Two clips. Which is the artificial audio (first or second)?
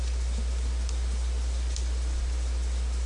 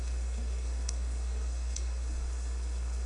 second